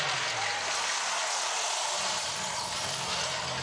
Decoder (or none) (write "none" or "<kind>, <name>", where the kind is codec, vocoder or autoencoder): vocoder, BigVGAN v2